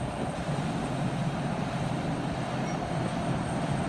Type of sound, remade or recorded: recorded